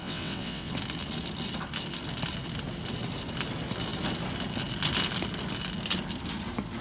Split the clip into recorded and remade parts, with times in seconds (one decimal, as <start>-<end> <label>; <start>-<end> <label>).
0.0-0.7 remade; 0.7-6.8 recorded